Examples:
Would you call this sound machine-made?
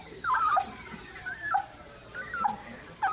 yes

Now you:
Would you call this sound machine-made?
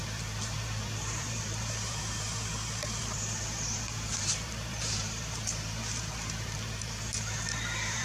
yes